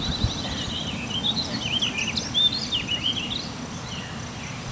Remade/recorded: recorded